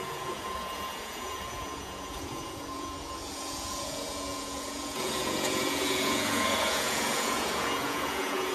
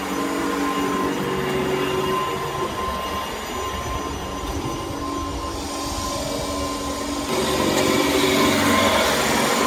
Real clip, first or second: second